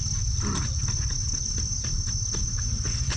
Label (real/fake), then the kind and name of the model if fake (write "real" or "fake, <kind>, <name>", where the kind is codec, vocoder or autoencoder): real